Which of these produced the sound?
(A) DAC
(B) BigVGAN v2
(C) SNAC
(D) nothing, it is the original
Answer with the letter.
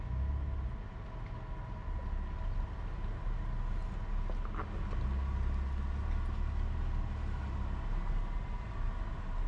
D